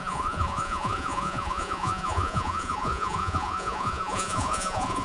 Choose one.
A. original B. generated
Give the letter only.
B